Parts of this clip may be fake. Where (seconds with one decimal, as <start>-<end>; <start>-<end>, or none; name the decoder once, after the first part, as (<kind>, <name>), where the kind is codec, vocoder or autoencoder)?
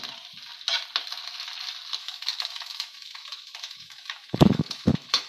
2.0-5.3 (autoencoder, DAC-VAE)